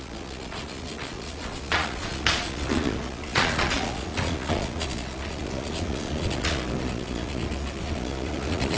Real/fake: fake